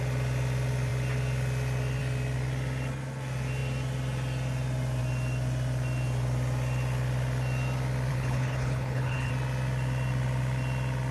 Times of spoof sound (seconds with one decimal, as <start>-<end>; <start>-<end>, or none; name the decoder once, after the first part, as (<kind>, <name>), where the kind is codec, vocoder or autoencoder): 8.1-9.3 (codec, HILCodec)